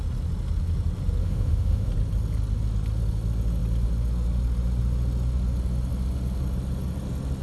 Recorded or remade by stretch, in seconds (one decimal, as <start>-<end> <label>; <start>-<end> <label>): 0.0-1.2 recorded; 1.2-1.9 remade; 1.9-7.4 recorded